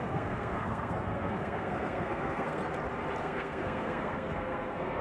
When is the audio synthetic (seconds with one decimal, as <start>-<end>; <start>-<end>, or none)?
0.0-2.6; 3.2-5.0